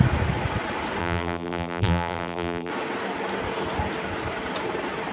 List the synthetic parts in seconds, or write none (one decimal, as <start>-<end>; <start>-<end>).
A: 1.0-2.7